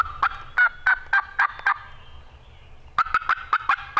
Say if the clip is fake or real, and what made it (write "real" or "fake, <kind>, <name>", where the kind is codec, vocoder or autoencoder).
real